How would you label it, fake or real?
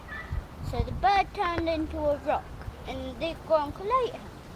real